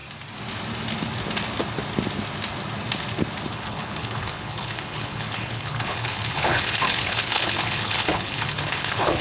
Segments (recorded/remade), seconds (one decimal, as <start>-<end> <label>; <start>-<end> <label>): 0.0-3.5 recorded; 3.5-9.2 remade